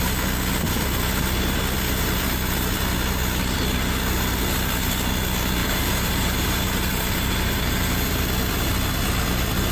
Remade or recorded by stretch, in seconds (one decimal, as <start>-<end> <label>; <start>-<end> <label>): 0.0-5.6 recorded; 5.6-8.1 remade; 8.1-9.7 recorded